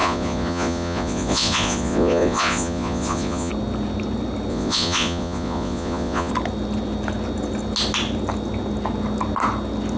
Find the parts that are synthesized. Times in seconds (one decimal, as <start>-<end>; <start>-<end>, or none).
0.0-3.5; 4.5-6.3